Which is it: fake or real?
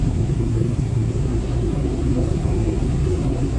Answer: fake